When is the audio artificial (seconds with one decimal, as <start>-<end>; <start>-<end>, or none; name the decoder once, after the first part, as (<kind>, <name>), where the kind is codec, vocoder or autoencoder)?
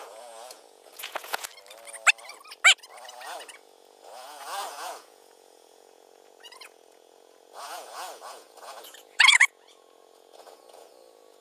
0.0-1.5 (vocoder, Vocos); 3.1-11.4